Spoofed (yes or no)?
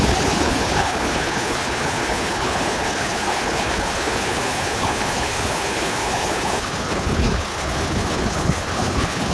yes